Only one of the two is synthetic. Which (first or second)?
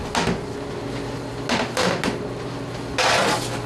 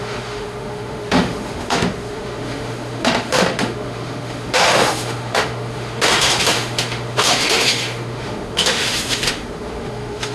second